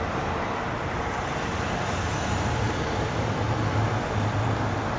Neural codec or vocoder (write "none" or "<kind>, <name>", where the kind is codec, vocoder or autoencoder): vocoder, BigVGAN v2